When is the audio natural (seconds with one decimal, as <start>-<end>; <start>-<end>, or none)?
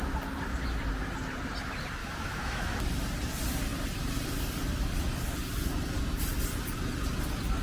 0.0-2.0; 2.8-7.6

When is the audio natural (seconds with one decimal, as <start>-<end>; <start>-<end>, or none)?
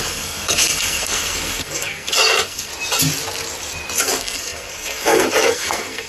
2.7-4.0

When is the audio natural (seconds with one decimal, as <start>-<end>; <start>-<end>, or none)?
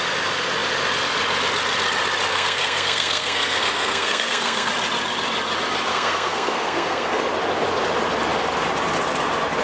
0.0-2.3; 4.7-5.9; 7.2-9.6